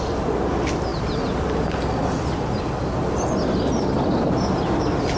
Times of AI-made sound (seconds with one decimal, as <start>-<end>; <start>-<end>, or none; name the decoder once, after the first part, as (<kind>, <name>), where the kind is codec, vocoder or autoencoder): none